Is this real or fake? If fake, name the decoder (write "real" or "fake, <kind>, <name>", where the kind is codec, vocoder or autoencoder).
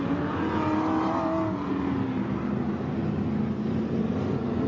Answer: real